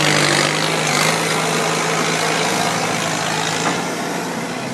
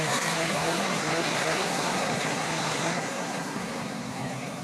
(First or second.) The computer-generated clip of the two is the second